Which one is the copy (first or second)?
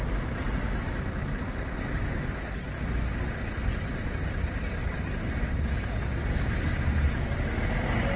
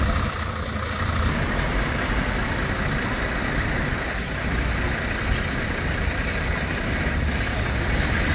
second